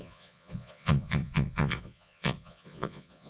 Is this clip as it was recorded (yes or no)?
no